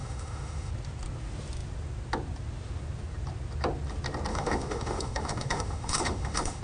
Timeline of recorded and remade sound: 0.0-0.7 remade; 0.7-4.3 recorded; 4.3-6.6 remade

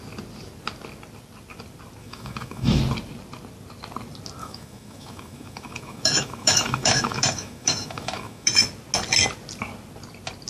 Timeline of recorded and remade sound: 0.0-2.0 recorded; 2.0-2.8 remade; 2.8-4.4 recorded; 4.4-8.6 remade; 8.6-10.5 recorded

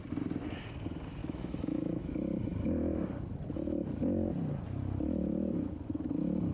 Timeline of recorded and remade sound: 0.0-1.2 recorded; 1.2-2.1 remade; 2.1-6.5 recorded

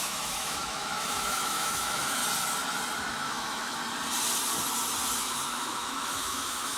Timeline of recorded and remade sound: 0.0-2.2 remade; 2.2-3.1 recorded; 3.1-3.8 remade; 3.8-5.5 recorded; 5.5-6.8 remade

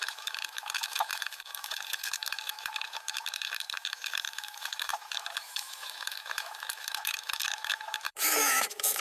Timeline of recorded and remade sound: 0.0-9.0 remade

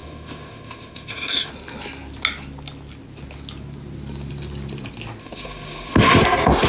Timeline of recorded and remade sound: 0.0-1.5 remade; 1.5-5.2 recorded; 5.2-6.2 remade; 6.2-6.7 recorded

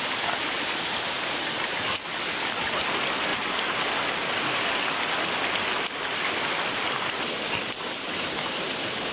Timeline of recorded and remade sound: 0.0-9.1 recorded

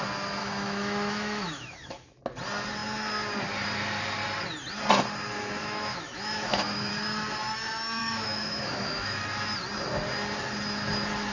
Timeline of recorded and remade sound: 0.0-0.4 recorded; 0.4-2.2 remade; 2.2-5.6 recorded; 5.6-6.9 remade; 6.9-8.0 recorded; 8.0-9.2 remade; 9.2-11.3 recorded